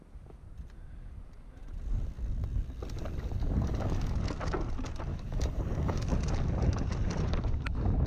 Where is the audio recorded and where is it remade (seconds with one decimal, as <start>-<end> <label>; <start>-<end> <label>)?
0.0-3.4 recorded; 3.4-4.4 remade; 4.4-5.1 recorded; 5.1-6.0 remade; 6.0-8.1 recorded